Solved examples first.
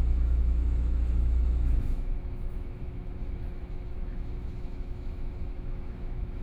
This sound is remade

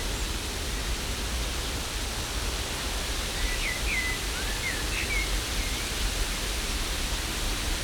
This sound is recorded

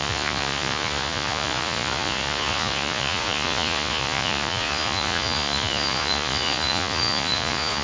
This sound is remade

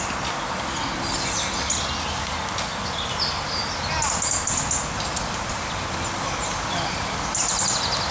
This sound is recorded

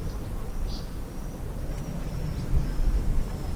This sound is recorded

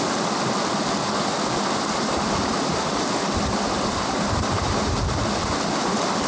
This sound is recorded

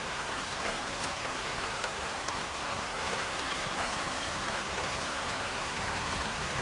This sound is remade